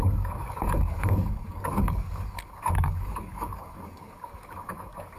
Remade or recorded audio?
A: remade